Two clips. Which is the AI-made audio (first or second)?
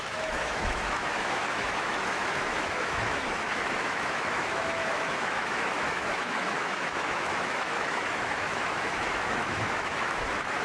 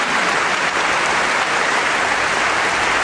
first